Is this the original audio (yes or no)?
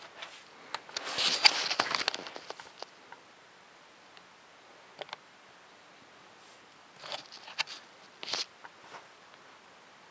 yes